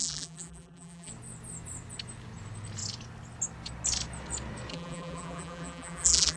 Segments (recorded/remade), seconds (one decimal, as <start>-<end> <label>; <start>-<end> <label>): 0.0-1.1 remade; 1.1-4.7 recorded; 4.7-6.4 remade

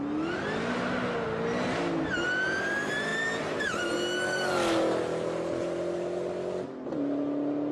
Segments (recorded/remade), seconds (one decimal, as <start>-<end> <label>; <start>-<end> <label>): 0.0-3.1 recorded; 3.1-3.9 remade; 3.9-7.7 recorded

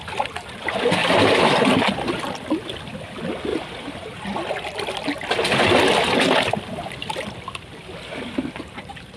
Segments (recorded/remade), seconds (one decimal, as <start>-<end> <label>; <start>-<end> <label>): 0.0-3.5 remade; 3.5-4.5 recorded; 4.5-9.2 remade

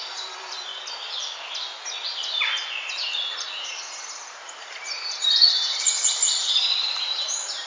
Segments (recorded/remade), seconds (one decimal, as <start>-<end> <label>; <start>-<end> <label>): 0.0-0.7 remade; 0.7-3.3 recorded; 3.3-7.7 remade

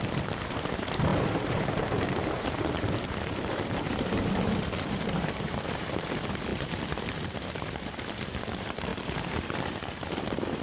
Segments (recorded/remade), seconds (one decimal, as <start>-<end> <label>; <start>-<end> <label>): 0.0-8.9 remade; 8.9-10.6 recorded

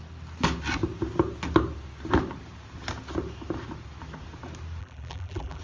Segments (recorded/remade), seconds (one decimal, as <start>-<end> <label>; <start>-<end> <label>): 0.0-4.8 recorded; 4.8-5.6 remade